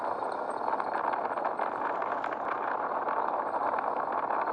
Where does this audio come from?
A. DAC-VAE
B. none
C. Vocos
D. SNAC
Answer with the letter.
B